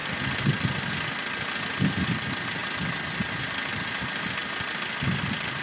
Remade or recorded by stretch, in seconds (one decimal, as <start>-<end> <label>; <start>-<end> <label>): 0.0-5.6 recorded